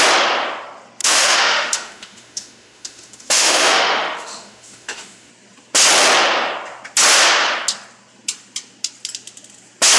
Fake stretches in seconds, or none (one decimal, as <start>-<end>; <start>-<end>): 1.0-5.3